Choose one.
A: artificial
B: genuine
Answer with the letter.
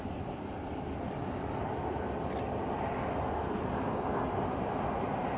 B